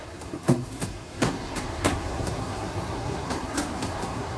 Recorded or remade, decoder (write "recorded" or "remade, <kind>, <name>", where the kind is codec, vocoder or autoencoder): remade, codec, SNAC